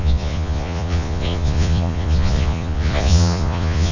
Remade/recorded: remade